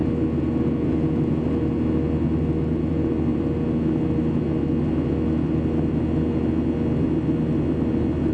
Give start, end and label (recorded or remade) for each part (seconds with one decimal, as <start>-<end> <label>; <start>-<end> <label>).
0.0-8.3 recorded